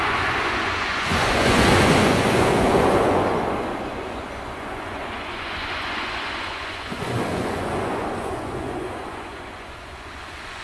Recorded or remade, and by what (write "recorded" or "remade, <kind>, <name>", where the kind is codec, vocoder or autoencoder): remade, vocoder, Vocos